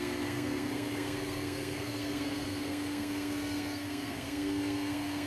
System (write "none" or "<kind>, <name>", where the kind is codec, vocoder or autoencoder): codec, SNAC